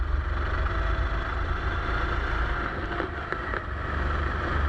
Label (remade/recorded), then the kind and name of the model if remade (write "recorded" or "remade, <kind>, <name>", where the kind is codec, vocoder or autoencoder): recorded